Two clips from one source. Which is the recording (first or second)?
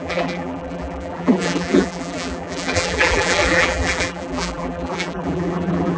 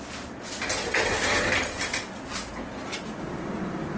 second